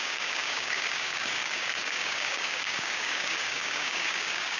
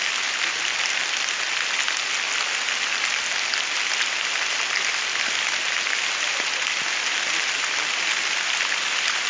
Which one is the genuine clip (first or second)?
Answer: second